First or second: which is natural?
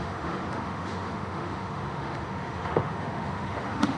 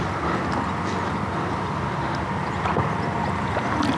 second